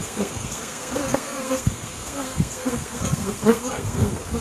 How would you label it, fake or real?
fake